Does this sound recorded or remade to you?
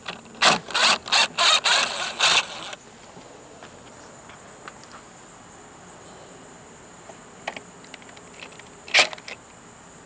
recorded